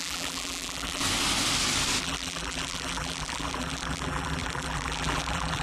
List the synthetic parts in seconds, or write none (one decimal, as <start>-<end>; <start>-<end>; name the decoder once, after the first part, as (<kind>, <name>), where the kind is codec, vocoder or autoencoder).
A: 0.0-1.0 (vocoder, BigVGAN v2); 2.0-5.6